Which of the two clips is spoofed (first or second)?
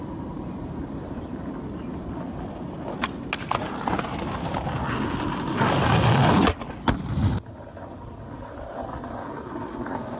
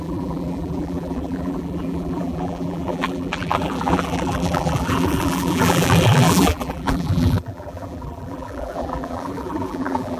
second